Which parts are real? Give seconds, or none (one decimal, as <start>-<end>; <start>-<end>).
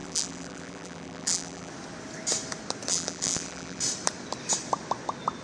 1.7-2.9; 3.8-5.4